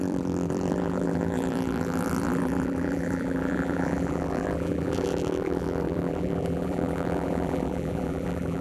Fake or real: fake